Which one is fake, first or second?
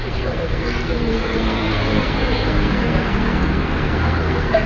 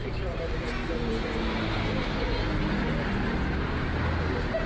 first